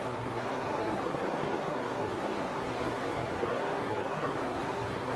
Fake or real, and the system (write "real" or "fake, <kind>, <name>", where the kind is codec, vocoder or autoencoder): fake, codec, SNAC